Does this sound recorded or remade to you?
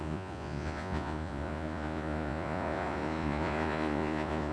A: remade